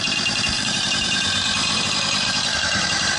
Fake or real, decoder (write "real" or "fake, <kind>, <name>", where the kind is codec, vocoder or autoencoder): fake, vocoder, BigVGAN v2